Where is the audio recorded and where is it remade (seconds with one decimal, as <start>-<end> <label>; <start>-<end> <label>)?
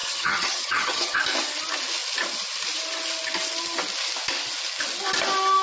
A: 0.0-1.2 remade; 1.2-5.6 recorded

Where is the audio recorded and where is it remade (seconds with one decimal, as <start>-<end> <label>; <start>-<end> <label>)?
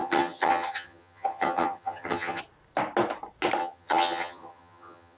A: 0.0-2.4 remade; 2.4-3.6 recorded; 3.6-5.2 remade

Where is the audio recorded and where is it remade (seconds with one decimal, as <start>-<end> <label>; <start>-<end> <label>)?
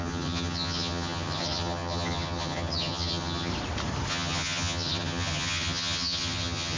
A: 0.0-3.5 remade; 3.5-4.1 recorded; 4.1-6.8 remade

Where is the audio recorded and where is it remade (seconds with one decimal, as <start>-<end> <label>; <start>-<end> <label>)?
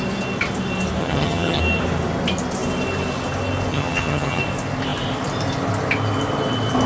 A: 0.0-1.0 recorded; 1.0-1.6 remade; 1.6-3.7 recorded; 3.7-4.4 remade; 4.4-6.9 recorded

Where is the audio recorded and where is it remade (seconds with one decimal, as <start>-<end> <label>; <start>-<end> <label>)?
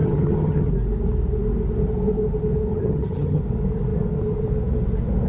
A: 0.0-0.7 remade; 0.7-2.7 recorded; 2.7-3.4 remade; 3.4-5.3 recorded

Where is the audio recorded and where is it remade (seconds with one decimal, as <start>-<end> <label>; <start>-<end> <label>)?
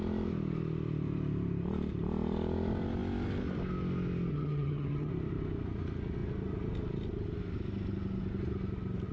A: 0.0-4.3 recorded; 4.3-5.1 remade; 5.1-9.1 recorded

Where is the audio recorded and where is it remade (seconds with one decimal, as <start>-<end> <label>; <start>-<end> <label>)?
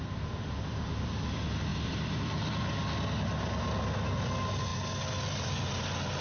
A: 0.0-6.2 recorded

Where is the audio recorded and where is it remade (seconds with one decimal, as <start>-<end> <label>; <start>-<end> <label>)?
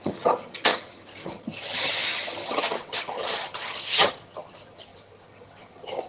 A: 0.0-6.1 remade